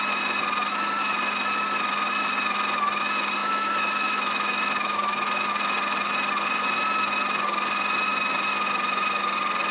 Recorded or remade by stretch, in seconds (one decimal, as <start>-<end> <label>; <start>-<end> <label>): 0.0-3.4 recorded; 3.4-5.5 remade; 5.5-9.7 recorded